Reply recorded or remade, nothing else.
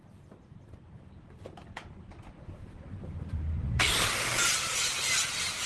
recorded